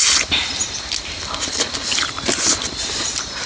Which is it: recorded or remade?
recorded